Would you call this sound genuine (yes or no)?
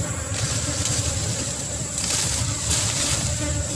yes